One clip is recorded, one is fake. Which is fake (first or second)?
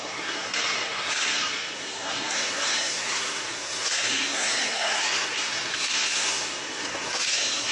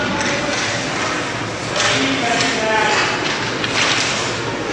first